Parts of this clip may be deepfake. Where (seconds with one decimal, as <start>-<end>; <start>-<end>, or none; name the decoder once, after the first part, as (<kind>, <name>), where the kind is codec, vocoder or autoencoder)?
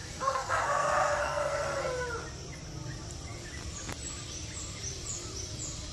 0.0-1.8 (codec, SNAC)